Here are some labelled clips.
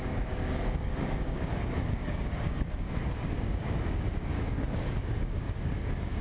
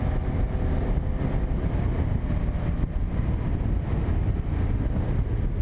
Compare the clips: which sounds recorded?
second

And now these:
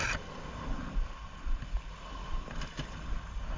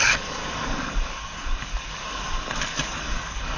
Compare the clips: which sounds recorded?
first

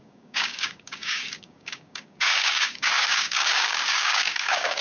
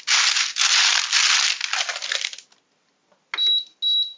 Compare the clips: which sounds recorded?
second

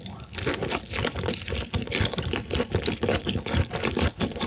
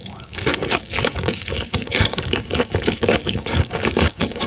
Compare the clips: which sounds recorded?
first